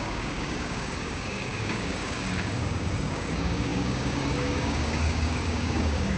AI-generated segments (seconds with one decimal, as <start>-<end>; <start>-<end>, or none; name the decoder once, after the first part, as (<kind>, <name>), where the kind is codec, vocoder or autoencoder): 0.0-6.2 (codec, DAC)